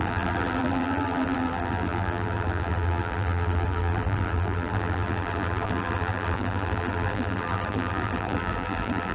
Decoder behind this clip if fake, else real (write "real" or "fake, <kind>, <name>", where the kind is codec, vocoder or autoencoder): fake, vocoder, BigVGAN v2